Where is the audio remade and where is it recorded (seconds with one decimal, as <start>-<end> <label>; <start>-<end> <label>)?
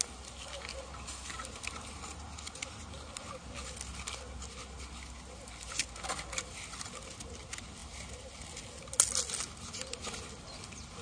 0.0-11.0 recorded